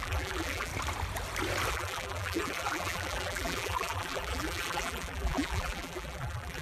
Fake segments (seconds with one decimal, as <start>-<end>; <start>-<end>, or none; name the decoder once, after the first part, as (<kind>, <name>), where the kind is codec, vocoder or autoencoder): 0.0-0.7 (vocoder, BigVGAN v2); 1.7-6.6

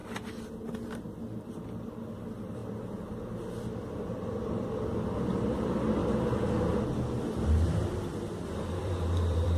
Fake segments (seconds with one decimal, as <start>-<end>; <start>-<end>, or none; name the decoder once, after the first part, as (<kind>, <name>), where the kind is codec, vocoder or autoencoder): 1.5-2.6 (vocoder, BigVGAN v2); 3.5-9.6